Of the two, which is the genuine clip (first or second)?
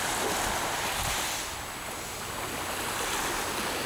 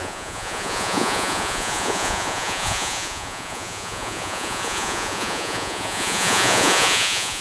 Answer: first